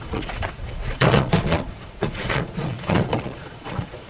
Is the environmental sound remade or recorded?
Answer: remade